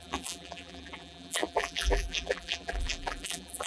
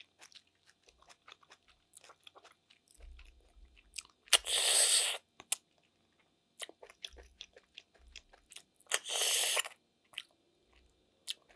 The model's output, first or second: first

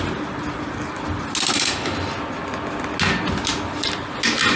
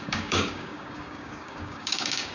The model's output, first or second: second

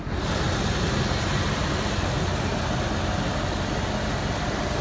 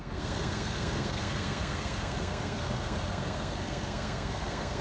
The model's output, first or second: second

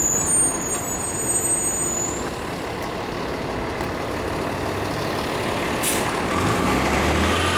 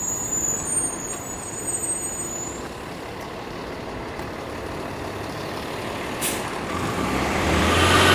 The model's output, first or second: second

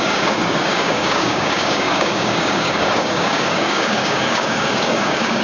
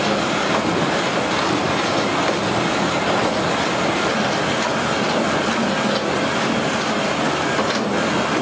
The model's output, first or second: first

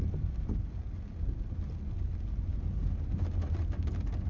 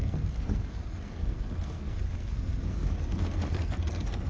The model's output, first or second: second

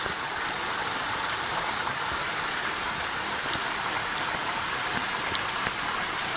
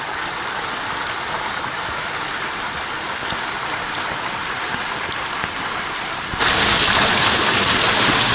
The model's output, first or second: first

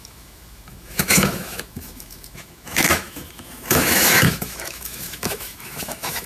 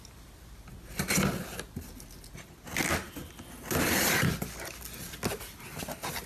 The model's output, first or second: first